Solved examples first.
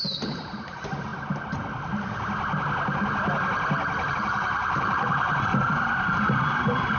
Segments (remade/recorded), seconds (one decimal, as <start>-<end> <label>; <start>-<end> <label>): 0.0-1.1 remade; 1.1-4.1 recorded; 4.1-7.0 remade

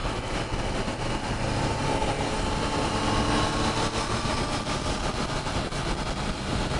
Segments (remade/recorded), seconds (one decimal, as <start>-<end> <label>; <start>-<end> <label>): 0.0-6.8 recorded

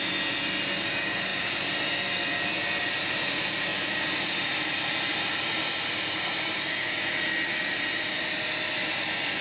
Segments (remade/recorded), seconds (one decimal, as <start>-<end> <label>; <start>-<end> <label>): 0.0-9.4 remade

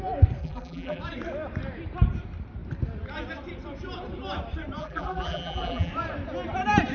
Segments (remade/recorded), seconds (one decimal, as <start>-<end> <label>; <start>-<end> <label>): 0.0-0.4 recorded; 0.4-1.0 remade; 1.0-4.8 recorded; 4.8-5.9 remade; 5.9-6.9 recorded

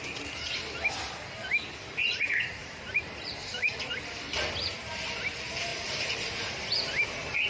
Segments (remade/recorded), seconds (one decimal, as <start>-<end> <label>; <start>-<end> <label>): 0.0-2.6 recorded; 2.6-4.2 remade; 4.2-5.7 recorded; 5.7-6.5 remade; 6.5-7.5 recorded